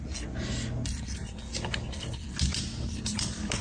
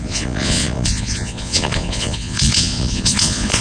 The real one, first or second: first